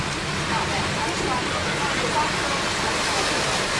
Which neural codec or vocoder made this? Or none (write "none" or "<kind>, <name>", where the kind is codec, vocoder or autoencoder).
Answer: none